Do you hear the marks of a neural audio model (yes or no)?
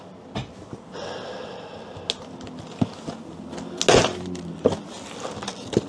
no